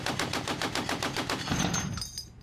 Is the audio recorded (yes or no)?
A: no